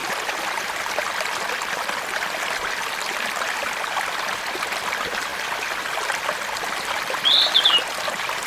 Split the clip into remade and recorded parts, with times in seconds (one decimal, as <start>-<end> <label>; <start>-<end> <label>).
0.0-4.1 recorded; 4.1-8.5 remade